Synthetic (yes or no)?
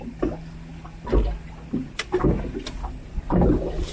no